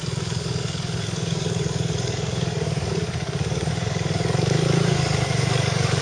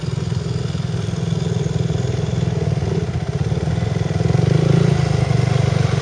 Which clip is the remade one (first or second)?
first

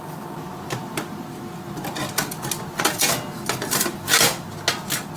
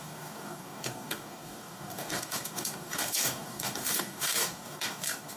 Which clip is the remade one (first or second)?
second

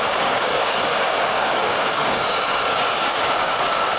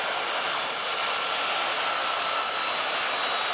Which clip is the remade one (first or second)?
first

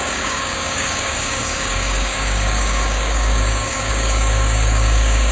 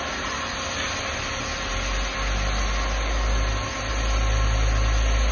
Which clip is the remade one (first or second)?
first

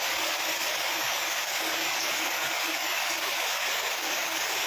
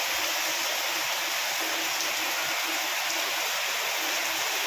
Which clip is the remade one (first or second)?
first